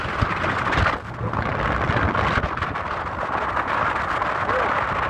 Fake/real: real